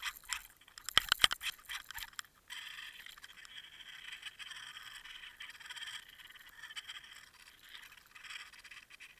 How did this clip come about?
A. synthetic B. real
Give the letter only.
B